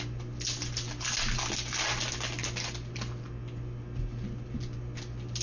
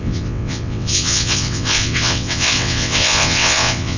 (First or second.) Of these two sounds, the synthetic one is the second